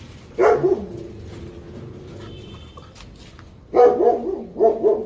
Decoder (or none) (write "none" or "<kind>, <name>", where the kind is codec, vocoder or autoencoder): none